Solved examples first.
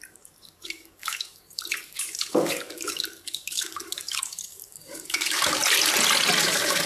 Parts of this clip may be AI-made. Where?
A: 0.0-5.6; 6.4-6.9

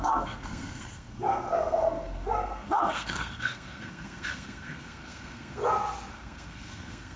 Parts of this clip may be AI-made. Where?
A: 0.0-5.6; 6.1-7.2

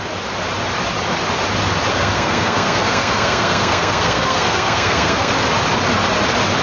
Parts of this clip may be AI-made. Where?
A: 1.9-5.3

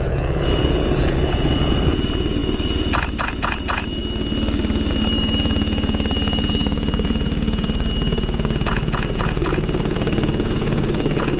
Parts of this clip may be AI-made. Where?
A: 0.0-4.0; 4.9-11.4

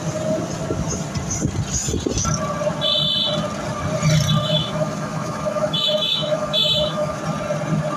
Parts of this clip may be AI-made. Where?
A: 4.4-7.2

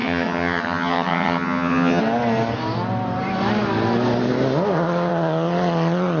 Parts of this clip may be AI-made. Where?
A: 0.0-2.0